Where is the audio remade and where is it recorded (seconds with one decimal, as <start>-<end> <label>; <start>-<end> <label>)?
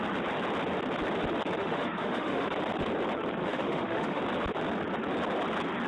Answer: 0.0-1.6 recorded; 1.6-2.5 remade; 2.5-3.4 recorded; 3.4-4.2 remade; 4.2-5.9 recorded